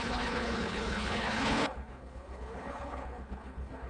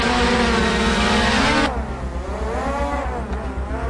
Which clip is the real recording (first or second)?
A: second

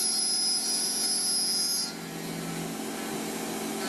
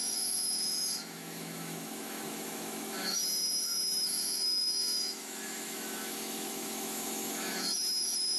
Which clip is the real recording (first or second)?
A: first